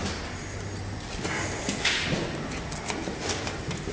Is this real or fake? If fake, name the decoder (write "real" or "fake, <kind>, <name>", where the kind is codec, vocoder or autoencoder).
real